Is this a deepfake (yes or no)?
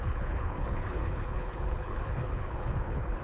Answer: yes